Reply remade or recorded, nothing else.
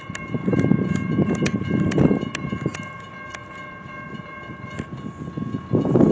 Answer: remade